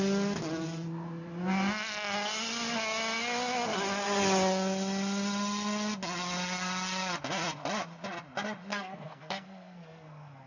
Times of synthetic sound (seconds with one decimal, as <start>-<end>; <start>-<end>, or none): 8.7-10.5